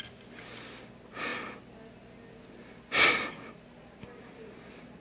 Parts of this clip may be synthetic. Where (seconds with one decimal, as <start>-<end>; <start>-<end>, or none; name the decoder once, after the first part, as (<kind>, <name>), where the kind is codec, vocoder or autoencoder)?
none